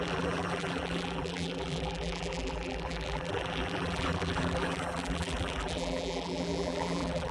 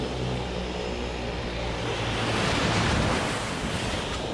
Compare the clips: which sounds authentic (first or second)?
second